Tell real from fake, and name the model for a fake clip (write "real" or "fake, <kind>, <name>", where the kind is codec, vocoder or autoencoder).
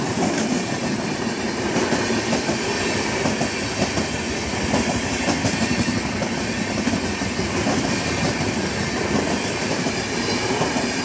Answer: real